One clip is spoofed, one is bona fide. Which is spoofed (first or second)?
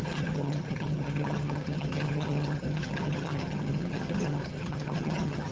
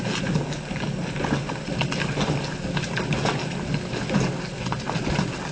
first